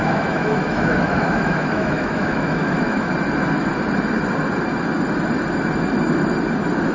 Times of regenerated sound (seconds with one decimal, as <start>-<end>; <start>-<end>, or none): 0.0-3.1